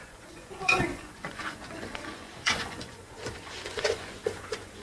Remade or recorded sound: remade